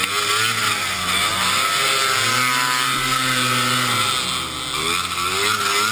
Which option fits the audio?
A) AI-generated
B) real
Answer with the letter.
B